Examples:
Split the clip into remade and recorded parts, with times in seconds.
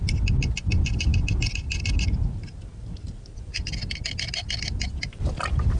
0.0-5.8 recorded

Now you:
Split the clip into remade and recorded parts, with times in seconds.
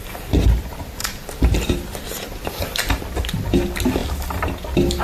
0.0-1.0 recorded; 1.0-3.0 remade; 3.0-5.0 recorded